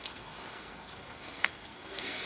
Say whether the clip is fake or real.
fake